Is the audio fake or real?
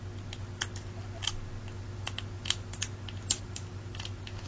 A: real